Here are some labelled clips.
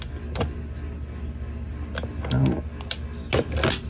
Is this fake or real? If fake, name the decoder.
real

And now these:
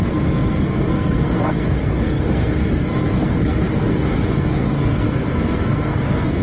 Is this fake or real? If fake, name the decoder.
fake, codec, SNAC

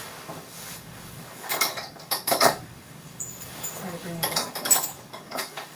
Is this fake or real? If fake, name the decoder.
fake, codec, DAC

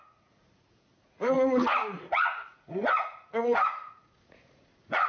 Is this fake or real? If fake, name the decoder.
fake, vocoder, Vocos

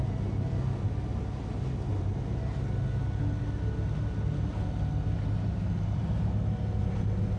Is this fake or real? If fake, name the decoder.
real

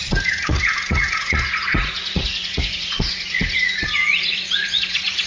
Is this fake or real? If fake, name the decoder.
fake, vocoder, Vocos